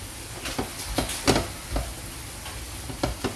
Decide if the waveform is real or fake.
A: real